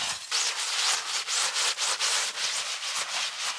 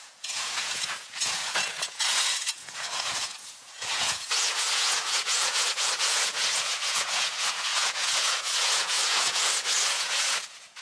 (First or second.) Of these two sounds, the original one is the first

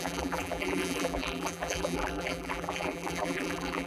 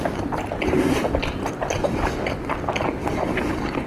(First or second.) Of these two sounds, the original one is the second